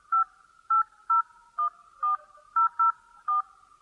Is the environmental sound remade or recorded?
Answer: recorded